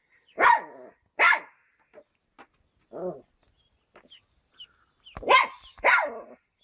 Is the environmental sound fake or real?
real